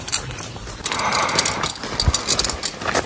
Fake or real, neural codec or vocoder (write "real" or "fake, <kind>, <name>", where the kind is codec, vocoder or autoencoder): real